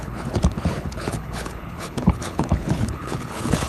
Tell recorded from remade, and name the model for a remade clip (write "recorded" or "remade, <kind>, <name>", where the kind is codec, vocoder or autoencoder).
remade, codec, HILCodec